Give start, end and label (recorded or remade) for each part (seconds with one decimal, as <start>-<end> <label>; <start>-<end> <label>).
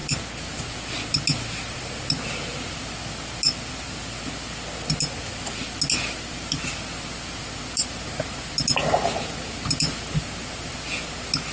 0.0-11.5 recorded